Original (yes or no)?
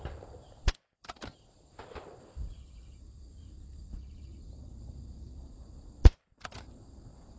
no